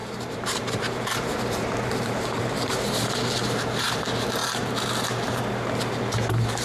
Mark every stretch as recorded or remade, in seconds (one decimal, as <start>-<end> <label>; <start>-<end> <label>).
0.0-3.9 remade; 3.9-6.6 recorded